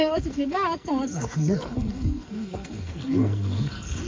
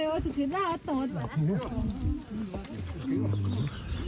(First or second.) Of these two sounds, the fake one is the first